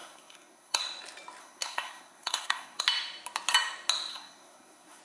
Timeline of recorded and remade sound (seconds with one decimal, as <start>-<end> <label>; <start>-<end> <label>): 0.0-0.8 remade; 0.8-1.4 recorded; 1.4-2.8 remade; 2.8-4.1 recorded; 4.1-5.0 remade